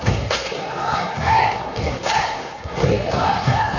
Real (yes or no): no